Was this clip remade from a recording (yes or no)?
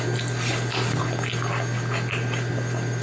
no